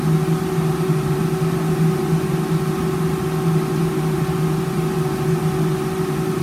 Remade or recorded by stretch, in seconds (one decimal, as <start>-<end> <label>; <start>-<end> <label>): 0.0-6.4 recorded